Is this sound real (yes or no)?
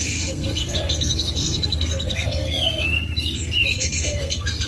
no